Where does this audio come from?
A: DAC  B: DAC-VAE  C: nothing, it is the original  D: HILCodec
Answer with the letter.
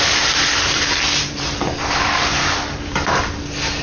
C